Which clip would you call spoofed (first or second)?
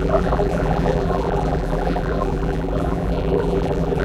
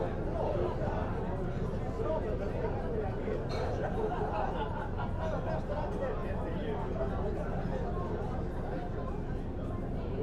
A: first